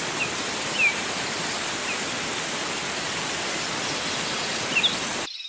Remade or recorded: recorded